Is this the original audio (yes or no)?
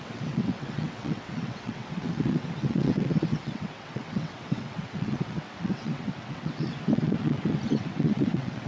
no